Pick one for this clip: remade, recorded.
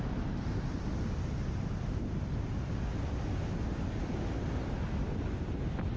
recorded